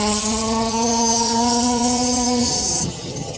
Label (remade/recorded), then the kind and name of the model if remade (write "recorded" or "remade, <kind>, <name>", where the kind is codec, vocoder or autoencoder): remade, vocoder, HiFi-GAN